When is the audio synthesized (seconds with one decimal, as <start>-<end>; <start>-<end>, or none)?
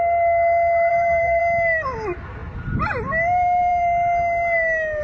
0.9-1.4